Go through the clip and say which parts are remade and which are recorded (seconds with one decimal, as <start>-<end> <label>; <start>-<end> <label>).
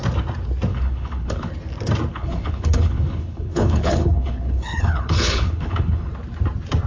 0.0-0.7 recorded; 0.7-1.5 remade; 1.5-2.1 recorded; 2.1-6.1 remade; 6.1-6.9 recorded